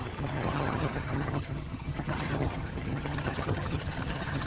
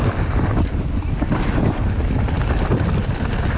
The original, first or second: second